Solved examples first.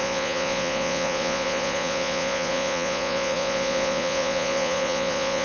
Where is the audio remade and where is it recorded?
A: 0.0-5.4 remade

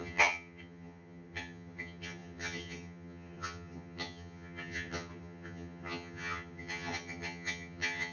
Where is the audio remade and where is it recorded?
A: 0.0-8.1 remade

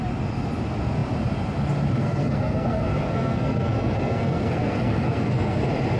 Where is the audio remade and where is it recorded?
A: 0.0-2.0 recorded; 2.0-5.6 remade; 5.6-6.0 recorded

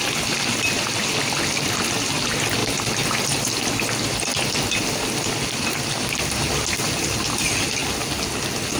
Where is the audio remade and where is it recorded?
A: 0.0-8.8 recorded

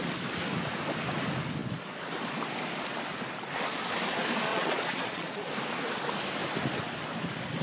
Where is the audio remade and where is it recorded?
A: 0.0-4.5 recorded; 4.5-5.5 remade; 5.5-7.6 recorded

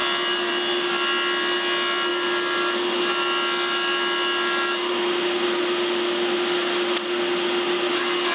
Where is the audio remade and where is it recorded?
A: 0.0-8.3 recorded

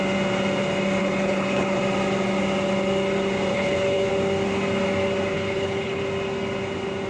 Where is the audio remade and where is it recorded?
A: 0.0-1.0 recorded; 1.0-1.8 remade; 1.8-3.5 recorded; 3.5-4.1 remade; 4.1-5.3 recorded; 5.3-6.0 remade; 6.0-7.1 recorded

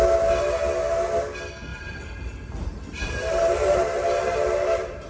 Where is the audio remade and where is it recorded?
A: 0.0-1.7 recorded; 1.7-5.1 remade